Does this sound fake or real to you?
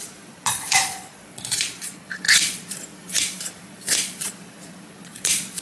fake